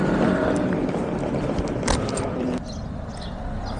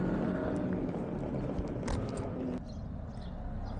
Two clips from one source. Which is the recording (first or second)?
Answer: second